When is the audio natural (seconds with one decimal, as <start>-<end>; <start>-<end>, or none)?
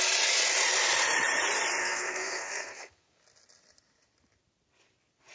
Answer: 0.0-1.8; 3.2-5.3